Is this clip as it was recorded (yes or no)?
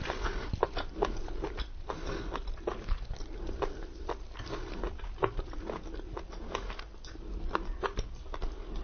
yes